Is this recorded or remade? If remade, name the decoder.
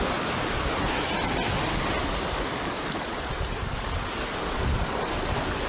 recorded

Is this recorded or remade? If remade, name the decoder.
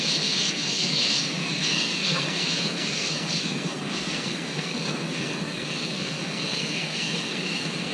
remade, codec, SNAC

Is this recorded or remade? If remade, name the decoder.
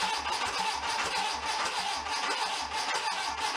recorded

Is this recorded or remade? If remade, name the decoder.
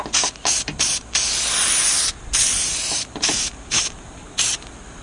recorded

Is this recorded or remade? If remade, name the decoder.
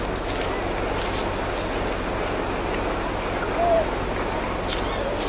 recorded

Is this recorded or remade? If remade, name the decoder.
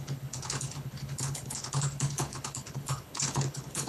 remade, codec, HILCodec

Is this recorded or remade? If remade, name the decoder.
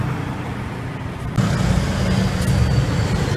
recorded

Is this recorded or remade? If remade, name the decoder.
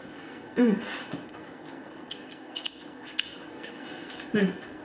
remade, codec, SNAC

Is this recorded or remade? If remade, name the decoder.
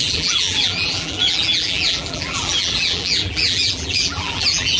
remade, vocoder, BigVGAN v2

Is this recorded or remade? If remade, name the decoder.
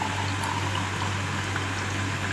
recorded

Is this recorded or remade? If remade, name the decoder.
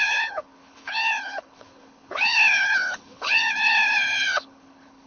remade, codec, HILCodec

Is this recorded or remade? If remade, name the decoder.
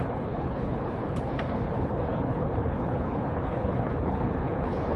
remade, codec, HILCodec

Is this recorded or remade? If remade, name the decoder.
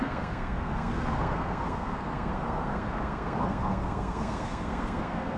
remade, codec, SNAC